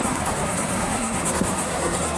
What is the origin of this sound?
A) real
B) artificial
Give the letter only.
B